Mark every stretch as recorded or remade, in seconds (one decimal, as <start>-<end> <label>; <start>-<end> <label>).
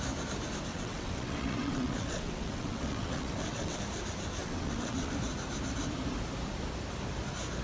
0.0-0.7 recorded; 0.7-3.8 remade; 3.8-4.4 recorded; 4.4-5.1 remade; 5.1-7.6 recorded